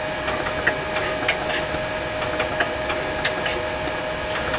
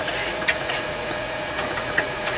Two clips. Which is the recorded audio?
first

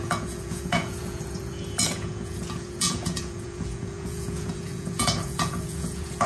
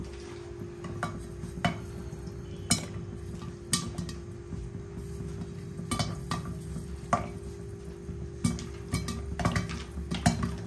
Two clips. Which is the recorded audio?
second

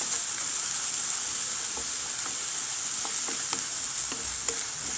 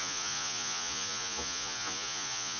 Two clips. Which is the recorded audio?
first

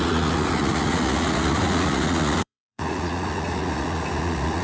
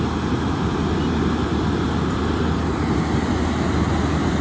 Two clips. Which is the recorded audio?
second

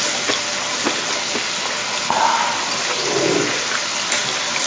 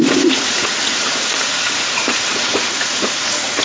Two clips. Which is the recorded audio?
first